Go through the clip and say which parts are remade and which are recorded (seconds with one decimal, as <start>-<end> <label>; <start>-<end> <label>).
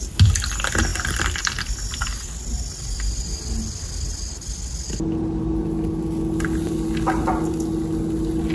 0.0-8.5 recorded